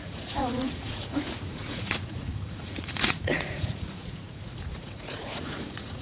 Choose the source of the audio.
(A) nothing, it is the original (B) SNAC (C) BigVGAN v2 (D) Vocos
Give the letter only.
D